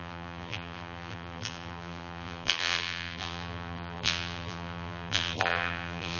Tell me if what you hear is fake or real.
fake